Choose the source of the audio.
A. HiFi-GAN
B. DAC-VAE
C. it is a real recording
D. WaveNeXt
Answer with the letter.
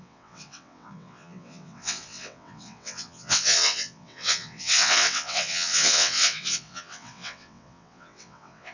D